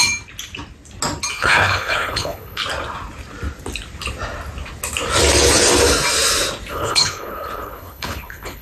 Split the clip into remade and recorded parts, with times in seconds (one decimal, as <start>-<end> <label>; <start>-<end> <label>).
0.0-1.3 recorded; 1.3-2.6 remade; 2.6-6.7 recorded; 6.7-8.6 remade